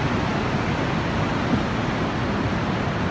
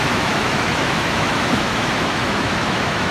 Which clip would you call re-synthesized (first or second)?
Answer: second